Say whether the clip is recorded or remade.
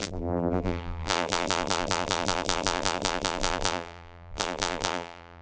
remade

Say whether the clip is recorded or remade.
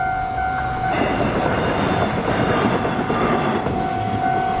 recorded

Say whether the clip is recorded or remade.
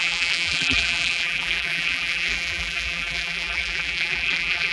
remade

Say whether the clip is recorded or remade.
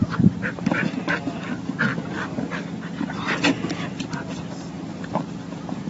recorded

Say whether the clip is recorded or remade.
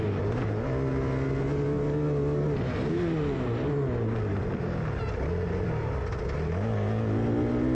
recorded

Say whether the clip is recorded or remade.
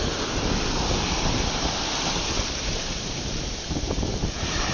recorded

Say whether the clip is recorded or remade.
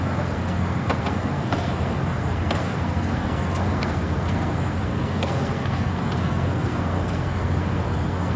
remade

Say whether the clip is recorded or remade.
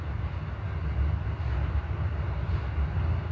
recorded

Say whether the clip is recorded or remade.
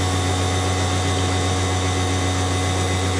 recorded